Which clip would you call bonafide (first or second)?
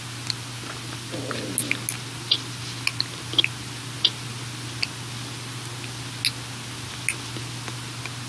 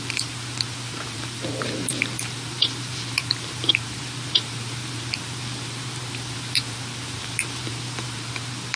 first